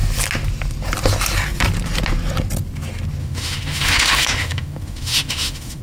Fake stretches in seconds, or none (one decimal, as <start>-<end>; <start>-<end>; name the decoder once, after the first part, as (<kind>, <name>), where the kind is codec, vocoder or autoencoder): 3.2-5.8 (autoencoder, DAC-VAE)